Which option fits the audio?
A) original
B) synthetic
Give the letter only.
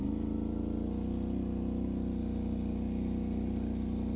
A